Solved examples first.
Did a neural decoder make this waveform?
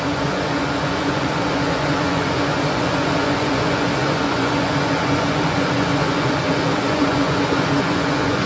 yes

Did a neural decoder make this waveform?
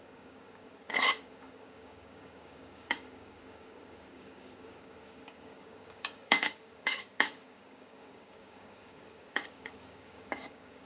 yes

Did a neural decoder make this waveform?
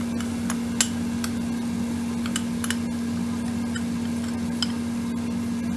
no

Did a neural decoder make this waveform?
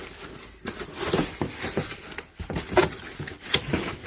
no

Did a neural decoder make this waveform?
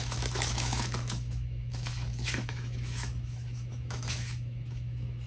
yes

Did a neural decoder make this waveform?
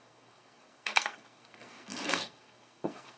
yes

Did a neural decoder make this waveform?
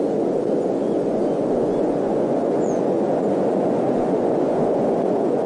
yes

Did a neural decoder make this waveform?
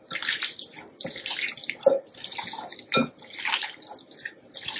no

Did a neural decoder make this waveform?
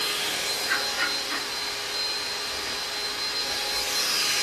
no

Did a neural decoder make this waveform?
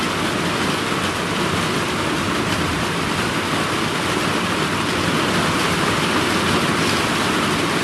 no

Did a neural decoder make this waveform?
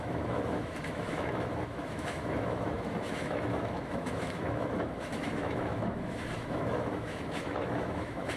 yes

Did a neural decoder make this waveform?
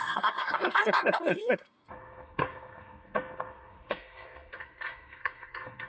yes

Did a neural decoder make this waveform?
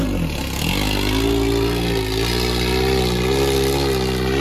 no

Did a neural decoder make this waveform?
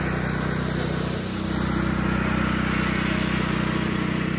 no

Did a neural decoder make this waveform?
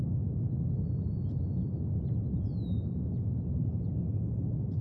no